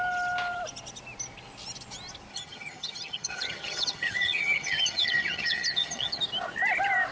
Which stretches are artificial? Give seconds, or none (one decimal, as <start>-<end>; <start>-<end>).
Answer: 2.3-6.2